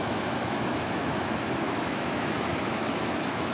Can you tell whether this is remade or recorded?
remade